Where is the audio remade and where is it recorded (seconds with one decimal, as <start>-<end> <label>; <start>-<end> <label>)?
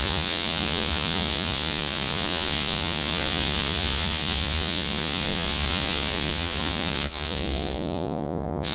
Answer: 0.0-8.7 remade